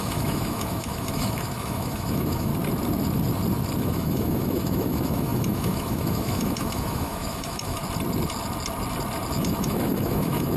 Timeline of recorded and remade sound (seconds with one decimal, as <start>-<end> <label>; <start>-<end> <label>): 0.0-2.5 remade; 2.5-3.8 recorded; 3.8-7.8 remade; 7.8-9.4 recorded; 9.4-10.6 remade